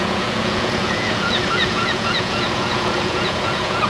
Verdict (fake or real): fake